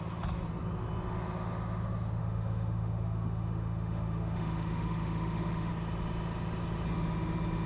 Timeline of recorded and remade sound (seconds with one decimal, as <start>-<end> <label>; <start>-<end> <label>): 0.0-2.2 recorded; 2.2-5.7 remade; 5.7-7.7 recorded